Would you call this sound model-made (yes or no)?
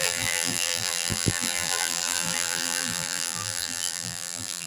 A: yes